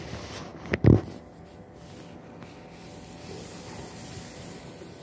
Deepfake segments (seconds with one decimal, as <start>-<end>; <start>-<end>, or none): none